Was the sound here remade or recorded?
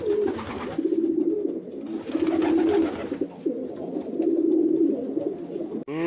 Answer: recorded